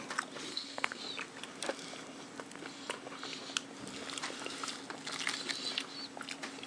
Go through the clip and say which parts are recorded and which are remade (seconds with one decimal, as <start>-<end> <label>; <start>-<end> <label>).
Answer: 0.0-0.5 recorded; 0.5-1.0 remade; 1.0-6.7 recorded